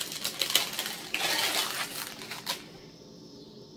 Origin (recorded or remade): recorded